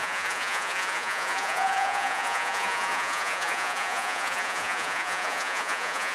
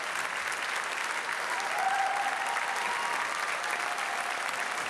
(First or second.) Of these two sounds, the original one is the second